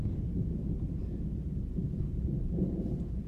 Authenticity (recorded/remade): remade